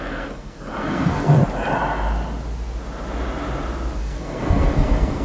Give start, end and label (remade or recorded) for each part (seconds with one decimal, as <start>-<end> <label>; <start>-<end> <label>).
0.0-1.4 remade; 1.4-4.0 recorded; 4.0-5.2 remade